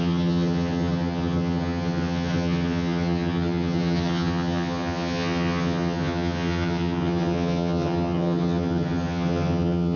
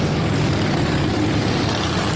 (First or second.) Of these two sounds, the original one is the second